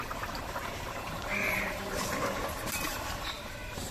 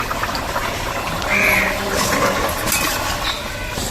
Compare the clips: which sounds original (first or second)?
second